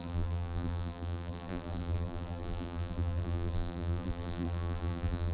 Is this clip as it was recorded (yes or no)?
no